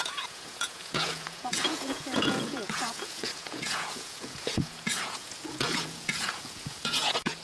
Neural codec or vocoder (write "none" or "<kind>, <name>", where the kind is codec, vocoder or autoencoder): vocoder, Vocos